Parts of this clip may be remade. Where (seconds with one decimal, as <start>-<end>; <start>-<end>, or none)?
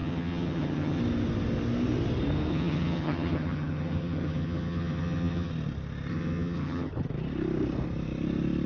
0.0-1.0; 2.5-5.5; 6.1-6.9